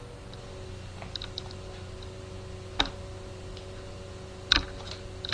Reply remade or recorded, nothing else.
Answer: recorded